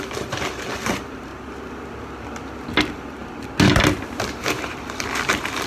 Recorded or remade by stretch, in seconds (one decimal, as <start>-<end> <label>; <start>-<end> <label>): 0.0-1.3 remade; 1.3-2.8 recorded; 2.8-3.2 remade; 3.2-4.4 recorded; 4.4-5.7 remade